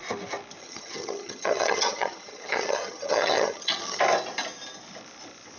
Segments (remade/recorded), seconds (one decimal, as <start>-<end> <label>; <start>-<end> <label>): 0.0-0.6 recorded; 0.6-4.0 remade; 4.0-5.6 recorded

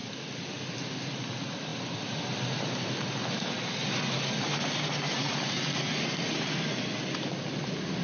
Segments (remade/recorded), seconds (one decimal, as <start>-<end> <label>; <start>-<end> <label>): 0.0-8.0 recorded